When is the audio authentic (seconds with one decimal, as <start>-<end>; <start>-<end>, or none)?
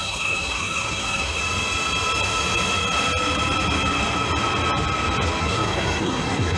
1.4-5.4